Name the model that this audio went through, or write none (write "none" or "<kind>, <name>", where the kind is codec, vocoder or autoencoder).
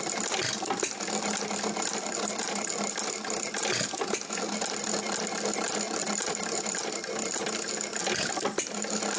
none